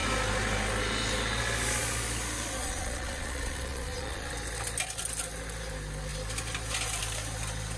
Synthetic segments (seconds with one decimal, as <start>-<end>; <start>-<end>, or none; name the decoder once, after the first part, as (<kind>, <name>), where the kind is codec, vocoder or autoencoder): 2.6-4.3 (vocoder, Vocos)